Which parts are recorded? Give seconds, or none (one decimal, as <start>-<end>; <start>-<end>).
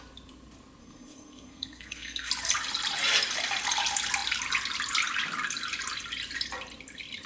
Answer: 0.0-0.8; 2.3-7.3